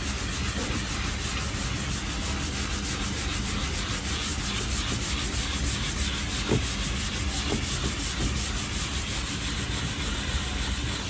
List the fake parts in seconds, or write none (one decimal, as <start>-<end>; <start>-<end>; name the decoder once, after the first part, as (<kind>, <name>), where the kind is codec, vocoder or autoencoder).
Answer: none